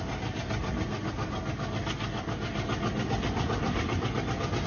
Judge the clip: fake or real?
real